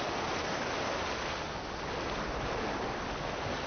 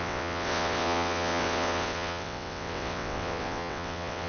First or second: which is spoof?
second